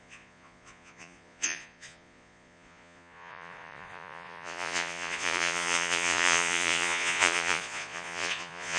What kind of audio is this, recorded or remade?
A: remade